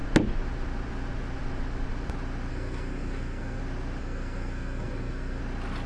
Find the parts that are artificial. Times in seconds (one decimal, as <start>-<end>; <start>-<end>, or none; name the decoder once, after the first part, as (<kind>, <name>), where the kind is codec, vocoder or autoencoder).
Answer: 2.5-3.6 (codec, SNAC); 4.0-5.4